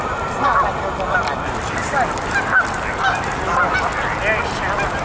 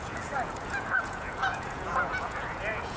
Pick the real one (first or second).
first